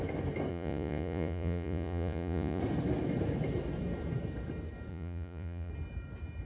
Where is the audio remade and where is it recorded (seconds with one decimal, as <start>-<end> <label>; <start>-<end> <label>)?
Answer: 0.0-0.5 recorded; 0.5-2.6 remade; 2.6-4.9 recorded; 4.9-5.7 remade; 5.7-6.4 recorded